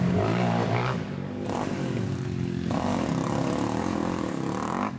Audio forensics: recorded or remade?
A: remade